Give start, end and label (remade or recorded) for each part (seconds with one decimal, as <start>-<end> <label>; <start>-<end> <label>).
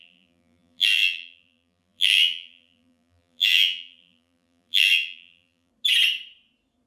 0.0-5.7 remade; 5.7-6.9 recorded